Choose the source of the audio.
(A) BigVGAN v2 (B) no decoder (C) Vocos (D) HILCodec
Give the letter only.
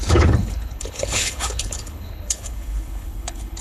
D